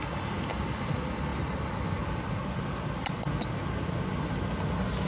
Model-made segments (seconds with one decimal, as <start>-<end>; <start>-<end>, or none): none